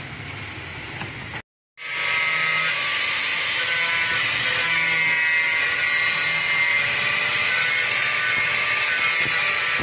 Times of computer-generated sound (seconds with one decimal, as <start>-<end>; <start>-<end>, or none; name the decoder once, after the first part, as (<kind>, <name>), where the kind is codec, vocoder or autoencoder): none